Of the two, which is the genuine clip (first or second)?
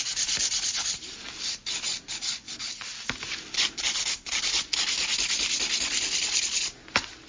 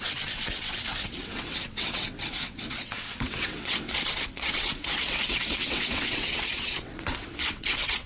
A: first